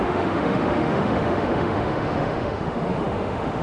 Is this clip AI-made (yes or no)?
yes